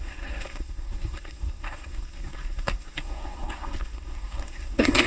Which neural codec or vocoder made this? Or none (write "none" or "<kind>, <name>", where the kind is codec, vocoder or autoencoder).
codec, SNAC